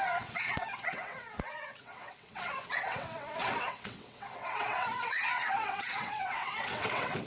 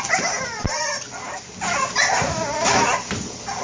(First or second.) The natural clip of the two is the second